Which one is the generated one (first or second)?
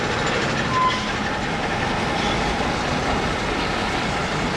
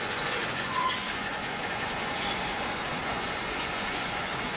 second